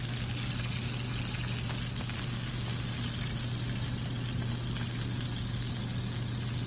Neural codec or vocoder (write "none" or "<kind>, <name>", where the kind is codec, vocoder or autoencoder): none